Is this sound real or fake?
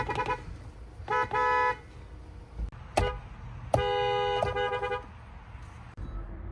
real